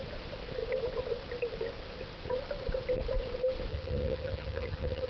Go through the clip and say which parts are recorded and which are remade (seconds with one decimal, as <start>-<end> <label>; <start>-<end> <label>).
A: 0.0-3.7 recorded; 3.7-5.1 remade